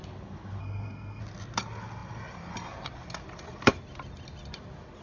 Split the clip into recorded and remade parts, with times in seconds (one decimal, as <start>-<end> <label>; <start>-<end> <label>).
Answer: 0.0-0.6 recorded; 0.6-1.2 remade; 1.2-5.0 recorded